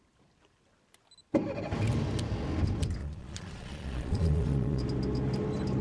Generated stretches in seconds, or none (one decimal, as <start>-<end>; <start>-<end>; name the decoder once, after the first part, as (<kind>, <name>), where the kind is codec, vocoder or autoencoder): 3.0-4.8 (vocoder, Vocos)